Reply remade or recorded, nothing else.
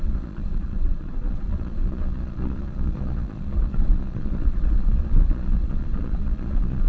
remade